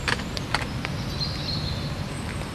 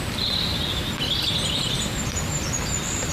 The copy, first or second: second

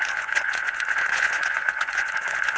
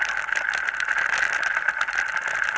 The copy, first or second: first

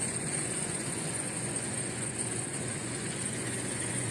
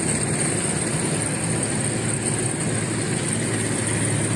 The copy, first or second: first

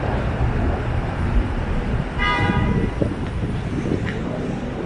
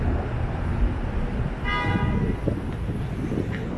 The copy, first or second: first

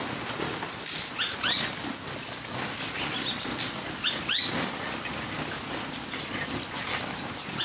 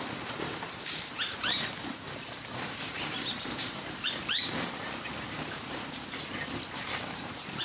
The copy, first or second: second